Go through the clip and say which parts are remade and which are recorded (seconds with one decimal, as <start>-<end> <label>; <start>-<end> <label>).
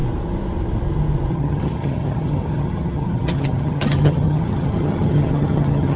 0.0-1.3 recorded; 1.3-6.0 remade